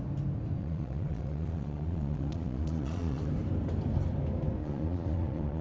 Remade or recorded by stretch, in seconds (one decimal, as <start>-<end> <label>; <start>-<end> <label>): 0.0-0.6 recorded; 0.6-3.3 remade; 3.3-4.6 recorded; 4.6-5.6 remade